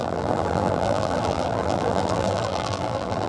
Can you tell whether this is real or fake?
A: fake